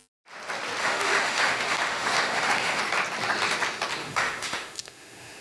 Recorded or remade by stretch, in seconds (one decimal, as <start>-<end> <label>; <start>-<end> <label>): 0.0-0.8 recorded; 0.8-2.8 remade; 2.8-4.0 recorded; 4.0-5.4 remade